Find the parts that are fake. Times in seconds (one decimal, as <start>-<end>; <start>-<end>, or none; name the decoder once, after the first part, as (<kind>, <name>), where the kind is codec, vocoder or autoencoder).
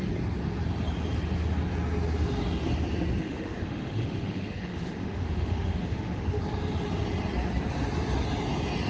3.2-6.4 (autoencoder, DAC-VAE)